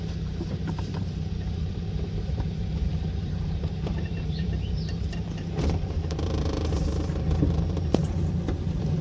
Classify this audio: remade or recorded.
remade